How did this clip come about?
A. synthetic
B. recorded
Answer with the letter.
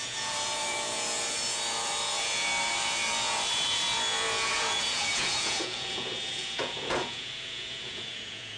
A